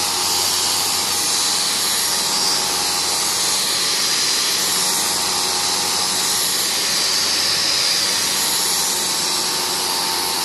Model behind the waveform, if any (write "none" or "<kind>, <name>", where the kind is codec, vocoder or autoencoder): none